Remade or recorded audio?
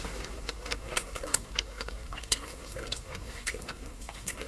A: remade